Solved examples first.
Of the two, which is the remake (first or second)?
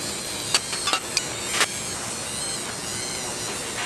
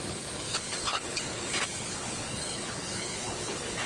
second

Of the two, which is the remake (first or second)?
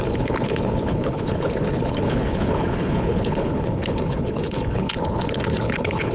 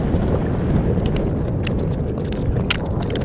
first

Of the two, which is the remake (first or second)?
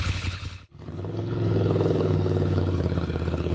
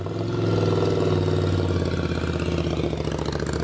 first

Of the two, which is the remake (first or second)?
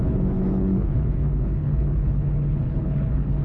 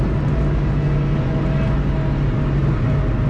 first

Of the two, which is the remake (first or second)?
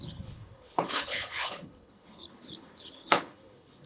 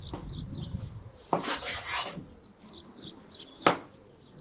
first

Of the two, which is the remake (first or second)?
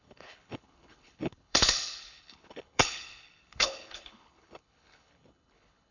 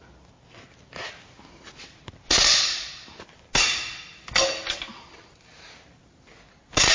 first